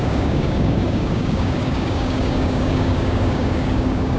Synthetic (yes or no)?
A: yes